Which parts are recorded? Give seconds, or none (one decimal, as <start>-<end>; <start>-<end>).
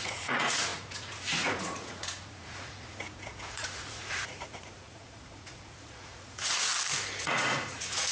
6.7-7.2